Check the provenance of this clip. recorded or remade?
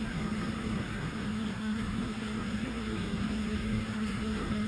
remade